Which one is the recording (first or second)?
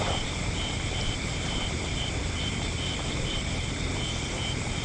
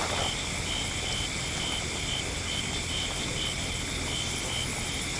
second